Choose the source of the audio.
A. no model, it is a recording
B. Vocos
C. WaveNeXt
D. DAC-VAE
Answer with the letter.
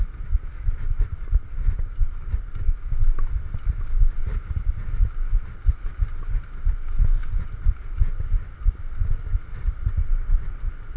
A